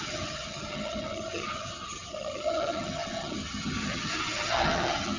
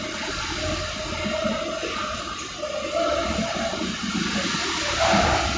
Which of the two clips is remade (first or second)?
first